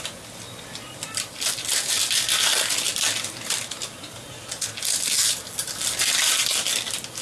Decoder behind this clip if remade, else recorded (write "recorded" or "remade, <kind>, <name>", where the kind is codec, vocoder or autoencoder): recorded